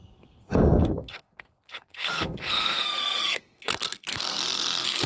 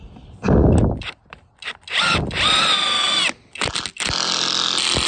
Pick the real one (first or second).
second